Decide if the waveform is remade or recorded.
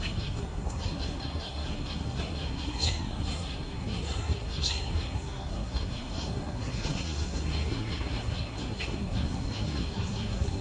remade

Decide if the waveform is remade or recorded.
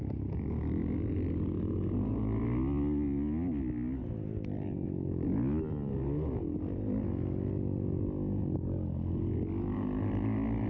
recorded